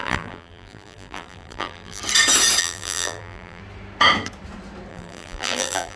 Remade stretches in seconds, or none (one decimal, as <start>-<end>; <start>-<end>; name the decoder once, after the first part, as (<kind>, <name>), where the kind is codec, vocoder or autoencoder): 0.0-2.0 (vocoder, BigVGAN v2); 2.6-3.6; 4.9-6.0